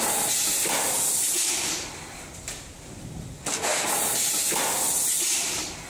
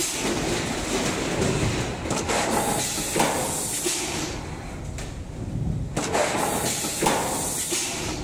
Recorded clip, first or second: second